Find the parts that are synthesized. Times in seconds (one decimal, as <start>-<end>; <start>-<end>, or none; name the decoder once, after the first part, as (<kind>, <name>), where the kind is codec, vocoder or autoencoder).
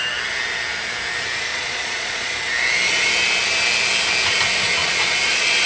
1.5-2.3 (vocoder, Vocos); 4.8-5.7